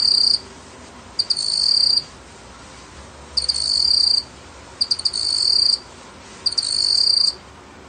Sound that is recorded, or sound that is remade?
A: recorded